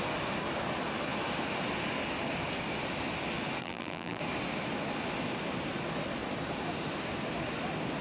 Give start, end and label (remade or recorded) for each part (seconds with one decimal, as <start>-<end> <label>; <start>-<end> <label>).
0.0-3.6 recorded; 3.6-4.2 remade; 4.2-8.0 recorded